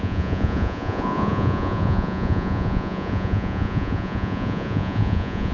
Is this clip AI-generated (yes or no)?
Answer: yes